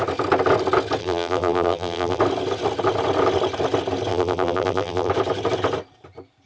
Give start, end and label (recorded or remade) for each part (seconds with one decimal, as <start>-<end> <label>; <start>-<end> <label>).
0.0-1.0 recorded; 1.0-2.2 remade; 2.2-4.1 recorded; 4.1-5.1 remade; 5.1-6.5 recorded